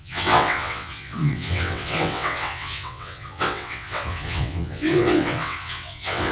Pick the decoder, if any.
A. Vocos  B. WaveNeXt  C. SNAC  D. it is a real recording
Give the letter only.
B